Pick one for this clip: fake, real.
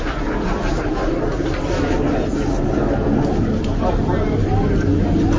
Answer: real